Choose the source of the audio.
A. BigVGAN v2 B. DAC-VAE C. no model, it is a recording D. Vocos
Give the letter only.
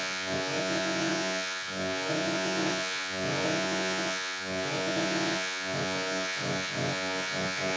D